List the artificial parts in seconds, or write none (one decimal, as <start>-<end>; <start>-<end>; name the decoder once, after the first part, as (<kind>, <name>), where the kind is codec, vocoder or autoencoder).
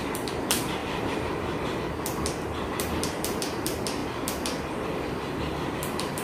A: 0.0-0.8 (vocoder, BigVGAN v2); 2.5-4.0; 4.8-6.2